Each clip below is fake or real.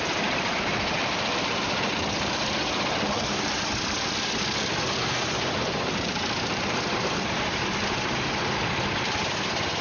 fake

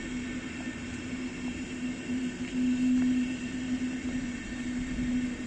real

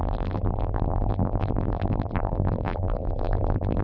fake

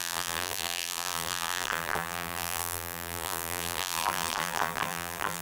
fake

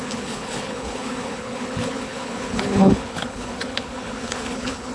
fake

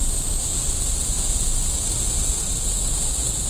real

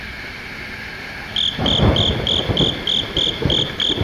real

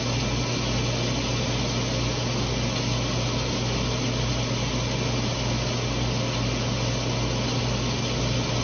real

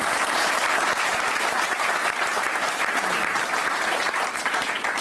fake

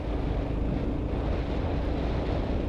real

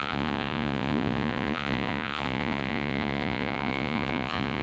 fake